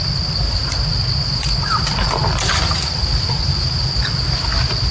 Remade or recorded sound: recorded